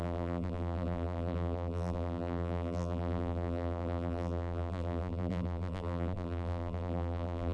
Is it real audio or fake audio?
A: fake